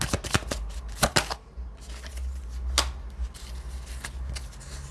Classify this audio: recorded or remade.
recorded